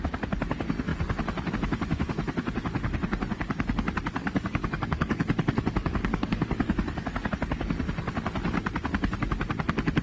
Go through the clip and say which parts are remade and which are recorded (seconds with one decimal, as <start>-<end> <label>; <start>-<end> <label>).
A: 0.0-4.2 recorded; 4.2-7.3 remade; 7.3-10.0 recorded